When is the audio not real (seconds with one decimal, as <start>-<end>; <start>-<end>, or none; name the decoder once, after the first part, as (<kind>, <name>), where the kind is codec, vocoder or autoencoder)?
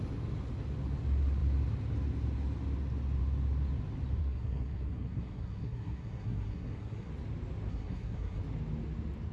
4.2-7.1 (codec, SNAC); 7.7-8.4